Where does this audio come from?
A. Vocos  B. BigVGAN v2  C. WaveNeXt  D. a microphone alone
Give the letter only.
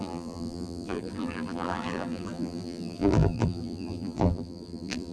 B